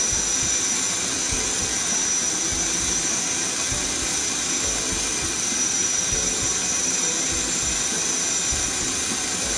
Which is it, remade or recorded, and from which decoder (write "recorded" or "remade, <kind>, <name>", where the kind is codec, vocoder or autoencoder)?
recorded